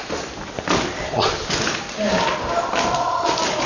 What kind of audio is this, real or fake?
real